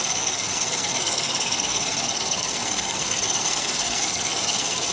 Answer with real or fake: fake